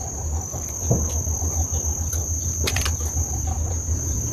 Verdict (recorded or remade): recorded